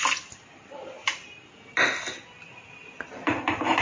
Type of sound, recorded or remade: recorded